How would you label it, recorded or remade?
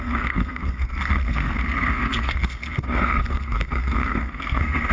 remade